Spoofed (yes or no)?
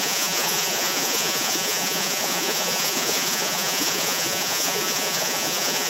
yes